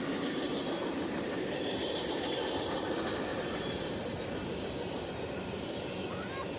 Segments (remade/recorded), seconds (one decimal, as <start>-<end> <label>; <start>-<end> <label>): 0.0-3.3 recorded; 3.3-5.1 remade; 5.1-6.6 recorded